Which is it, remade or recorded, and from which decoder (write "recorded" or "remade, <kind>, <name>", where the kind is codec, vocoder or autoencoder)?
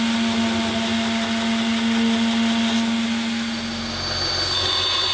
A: recorded